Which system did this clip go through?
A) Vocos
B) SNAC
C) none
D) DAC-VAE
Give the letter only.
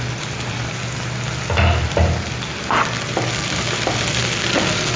C